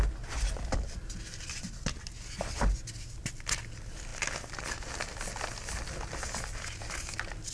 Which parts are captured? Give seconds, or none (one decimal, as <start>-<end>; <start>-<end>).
0.0-7.5